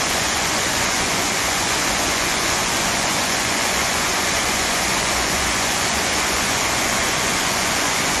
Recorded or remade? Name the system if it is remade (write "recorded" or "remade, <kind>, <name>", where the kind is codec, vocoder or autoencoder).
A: remade, vocoder, Vocos